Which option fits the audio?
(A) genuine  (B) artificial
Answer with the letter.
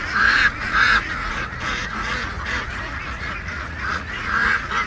B